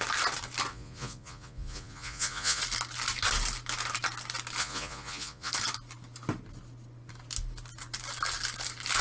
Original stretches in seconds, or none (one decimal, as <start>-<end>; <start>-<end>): 0.0-0.7; 2.6-4.6; 5.5-9.0